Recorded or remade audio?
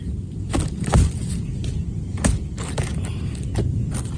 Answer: recorded